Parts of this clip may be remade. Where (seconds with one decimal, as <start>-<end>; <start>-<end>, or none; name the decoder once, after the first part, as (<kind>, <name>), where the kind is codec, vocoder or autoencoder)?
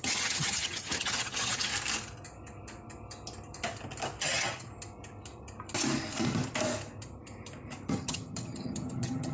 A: 0.0-1.7 (vocoder, HiFi-GAN); 4.2-4.7; 7.9-9.3